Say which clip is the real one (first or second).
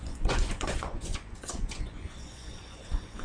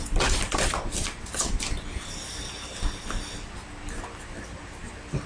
second